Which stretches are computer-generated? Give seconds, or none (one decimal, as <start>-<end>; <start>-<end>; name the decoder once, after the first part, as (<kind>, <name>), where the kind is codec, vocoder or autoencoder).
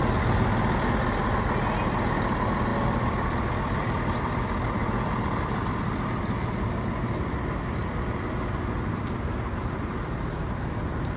none